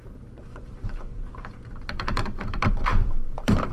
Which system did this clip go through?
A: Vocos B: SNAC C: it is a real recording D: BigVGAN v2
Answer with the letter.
D